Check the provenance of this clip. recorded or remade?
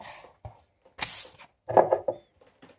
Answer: recorded